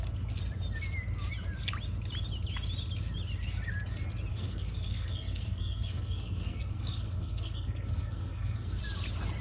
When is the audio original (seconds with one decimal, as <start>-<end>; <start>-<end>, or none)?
0.0-4.3; 8.8-9.4